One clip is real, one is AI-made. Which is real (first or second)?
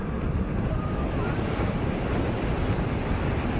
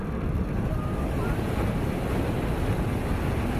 second